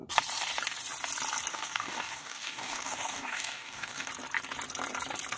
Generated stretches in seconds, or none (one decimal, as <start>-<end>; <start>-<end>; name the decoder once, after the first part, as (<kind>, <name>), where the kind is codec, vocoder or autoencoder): 1.5-4.1 (codec, DAC)